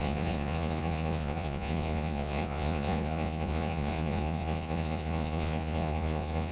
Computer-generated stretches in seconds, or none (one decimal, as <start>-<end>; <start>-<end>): 0.0-6.5